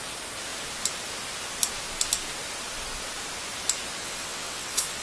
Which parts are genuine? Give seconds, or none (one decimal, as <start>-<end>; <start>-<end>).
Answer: 0.0-4.0